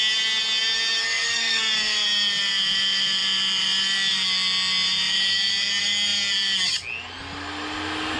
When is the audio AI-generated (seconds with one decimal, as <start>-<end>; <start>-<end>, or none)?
1.0-1.6